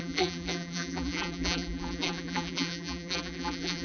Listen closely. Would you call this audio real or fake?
fake